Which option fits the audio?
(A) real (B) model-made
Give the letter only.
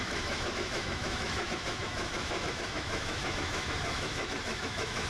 B